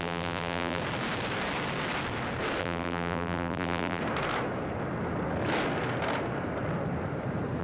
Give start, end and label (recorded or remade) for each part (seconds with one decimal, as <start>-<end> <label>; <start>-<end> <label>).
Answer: 0.0-0.8 remade; 0.8-2.6 recorded; 2.6-4.0 remade; 4.0-7.6 recorded